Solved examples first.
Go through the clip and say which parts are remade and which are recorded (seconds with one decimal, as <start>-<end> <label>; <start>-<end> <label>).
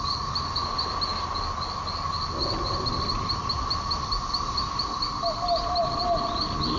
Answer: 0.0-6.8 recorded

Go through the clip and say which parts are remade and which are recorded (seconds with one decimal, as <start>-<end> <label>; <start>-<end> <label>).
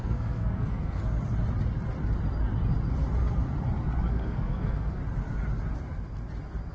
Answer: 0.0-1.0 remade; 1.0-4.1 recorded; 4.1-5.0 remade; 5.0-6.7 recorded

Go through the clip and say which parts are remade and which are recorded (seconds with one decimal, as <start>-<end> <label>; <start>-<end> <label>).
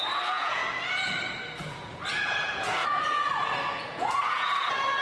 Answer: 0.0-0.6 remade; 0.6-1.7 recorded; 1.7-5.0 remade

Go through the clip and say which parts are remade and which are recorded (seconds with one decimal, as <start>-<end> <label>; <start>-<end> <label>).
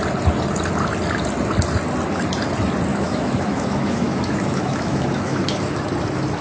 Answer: 0.0-2.9 recorded; 2.9-5.9 remade; 5.9-6.4 recorded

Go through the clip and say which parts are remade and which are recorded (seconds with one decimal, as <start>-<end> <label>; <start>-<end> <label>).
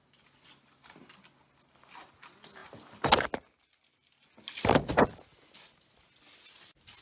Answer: 0.0-7.0 recorded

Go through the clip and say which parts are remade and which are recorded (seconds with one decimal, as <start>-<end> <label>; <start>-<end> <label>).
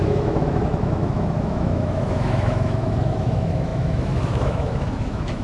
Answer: 0.0-5.4 remade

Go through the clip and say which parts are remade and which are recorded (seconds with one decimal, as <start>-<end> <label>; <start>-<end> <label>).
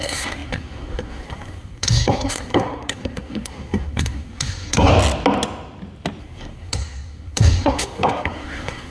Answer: 0.0-4.9 remade; 4.9-6.2 recorded; 6.2-8.9 remade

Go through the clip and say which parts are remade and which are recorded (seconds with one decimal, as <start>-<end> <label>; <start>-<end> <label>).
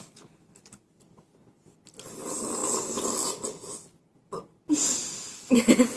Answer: 0.0-6.0 recorded